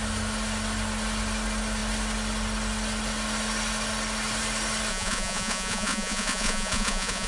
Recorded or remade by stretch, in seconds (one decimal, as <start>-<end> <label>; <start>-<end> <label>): 0.0-4.9 recorded; 4.9-7.3 remade